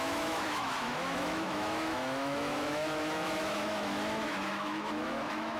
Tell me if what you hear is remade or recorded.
remade